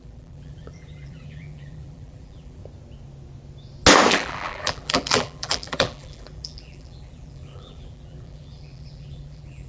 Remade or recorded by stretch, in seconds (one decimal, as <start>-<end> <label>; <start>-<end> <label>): 0.0-2.6 remade; 2.6-4.1 recorded; 4.1-9.7 remade